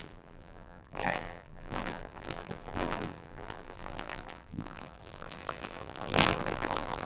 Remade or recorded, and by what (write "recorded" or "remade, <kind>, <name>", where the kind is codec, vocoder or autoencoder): remade, vocoder, BigVGAN v2